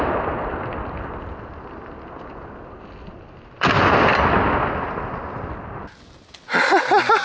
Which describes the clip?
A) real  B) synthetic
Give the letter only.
A